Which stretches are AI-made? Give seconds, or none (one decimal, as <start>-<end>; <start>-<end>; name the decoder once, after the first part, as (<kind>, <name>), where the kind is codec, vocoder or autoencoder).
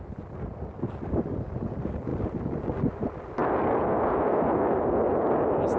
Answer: 3.4-4.6 (vocoder, BigVGAN v2)